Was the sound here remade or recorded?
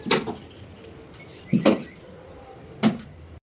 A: recorded